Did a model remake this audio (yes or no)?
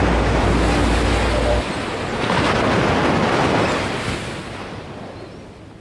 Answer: no